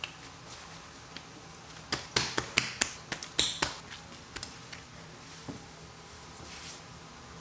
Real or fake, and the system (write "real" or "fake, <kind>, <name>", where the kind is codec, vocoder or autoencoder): real